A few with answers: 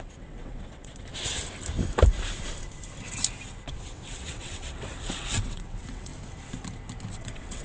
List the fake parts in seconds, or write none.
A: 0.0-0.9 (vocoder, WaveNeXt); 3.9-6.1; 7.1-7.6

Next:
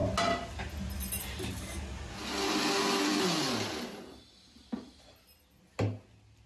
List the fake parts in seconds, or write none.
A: none

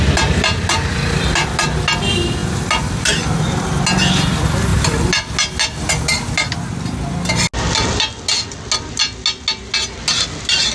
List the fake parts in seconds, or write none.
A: none

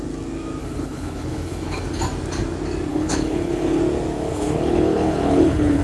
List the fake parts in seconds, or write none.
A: 0.6-1.8 (codec, HILCodec); 2.9-3.8; 4.3-5.8